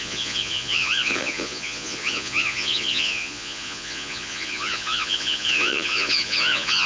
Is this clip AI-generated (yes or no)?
yes